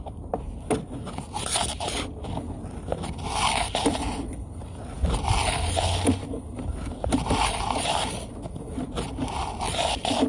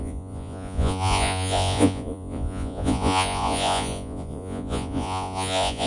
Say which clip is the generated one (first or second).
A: second